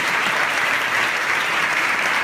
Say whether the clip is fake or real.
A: fake